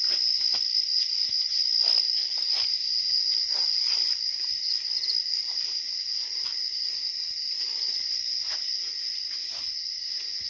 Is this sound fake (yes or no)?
no